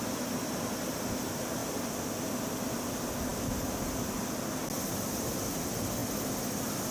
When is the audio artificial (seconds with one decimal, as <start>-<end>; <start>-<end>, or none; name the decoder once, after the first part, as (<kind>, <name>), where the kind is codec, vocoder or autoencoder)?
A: none